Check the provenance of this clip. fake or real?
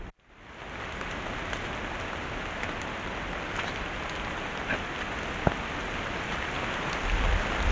real